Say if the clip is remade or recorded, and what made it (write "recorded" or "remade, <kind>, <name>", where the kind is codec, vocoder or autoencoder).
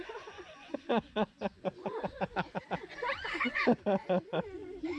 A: remade, vocoder, Vocos